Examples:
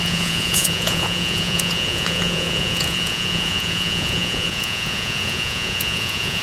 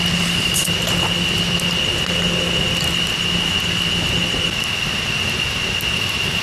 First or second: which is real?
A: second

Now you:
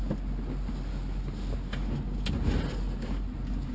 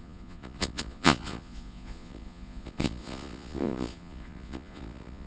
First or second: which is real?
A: first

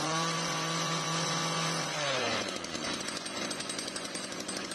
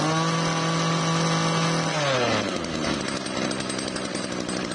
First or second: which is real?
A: second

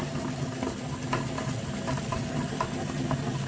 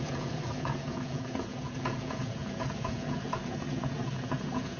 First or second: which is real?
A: first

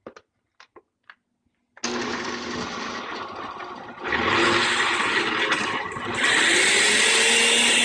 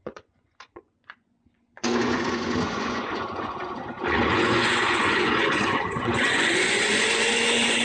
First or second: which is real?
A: first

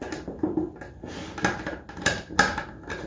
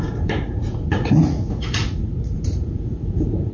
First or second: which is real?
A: first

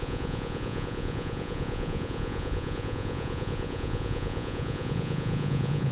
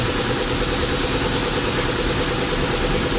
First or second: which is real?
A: second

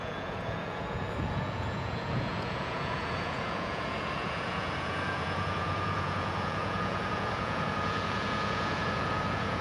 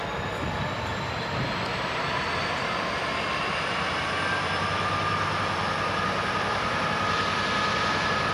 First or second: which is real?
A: second